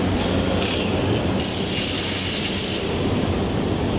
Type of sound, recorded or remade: recorded